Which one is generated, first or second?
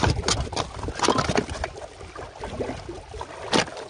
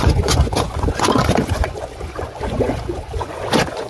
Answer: second